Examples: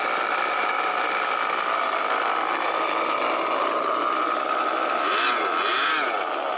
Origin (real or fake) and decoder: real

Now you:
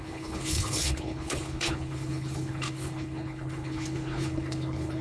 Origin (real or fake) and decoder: fake, codec, HILCodec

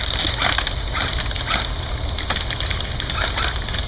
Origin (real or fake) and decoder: real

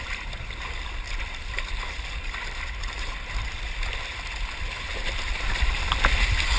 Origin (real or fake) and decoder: real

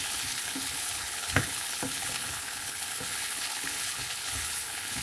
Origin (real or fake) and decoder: fake, codec, HILCodec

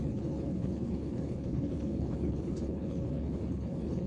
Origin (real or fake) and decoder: fake, codec, HILCodec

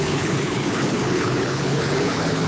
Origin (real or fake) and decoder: fake, codec, HILCodec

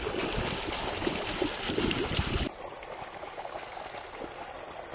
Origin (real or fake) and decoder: real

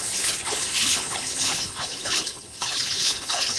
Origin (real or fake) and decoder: fake, codec, HILCodec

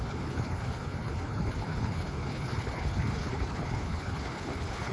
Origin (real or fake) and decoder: fake, codec, HILCodec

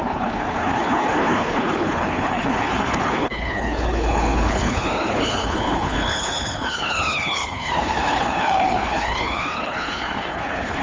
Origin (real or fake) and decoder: fake, codec, HILCodec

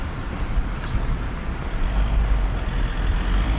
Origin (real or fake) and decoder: real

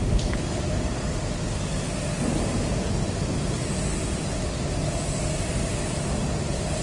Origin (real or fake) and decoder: real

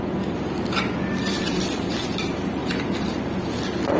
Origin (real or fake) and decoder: real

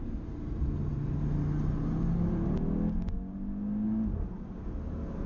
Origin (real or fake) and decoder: real